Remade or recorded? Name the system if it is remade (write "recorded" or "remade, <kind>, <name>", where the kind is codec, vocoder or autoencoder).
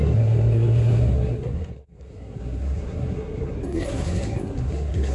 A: remade, codec, SNAC